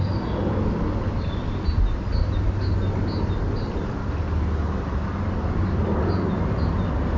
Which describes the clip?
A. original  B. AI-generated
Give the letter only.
A